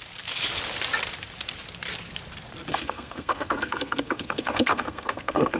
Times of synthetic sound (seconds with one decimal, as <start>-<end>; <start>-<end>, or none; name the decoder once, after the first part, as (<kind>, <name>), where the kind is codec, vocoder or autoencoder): 2.7-5.6 (codec, SNAC)